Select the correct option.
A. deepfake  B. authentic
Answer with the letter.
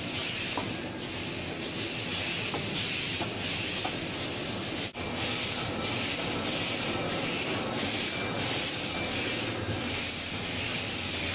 B